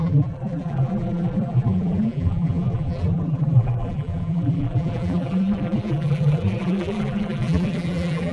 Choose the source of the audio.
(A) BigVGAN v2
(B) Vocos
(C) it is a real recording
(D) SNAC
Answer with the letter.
A